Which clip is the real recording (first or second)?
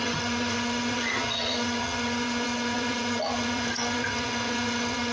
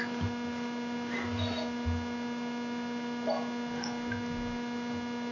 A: second